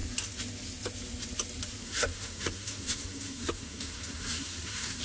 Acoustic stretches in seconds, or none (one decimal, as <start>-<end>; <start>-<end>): 0.0-1.8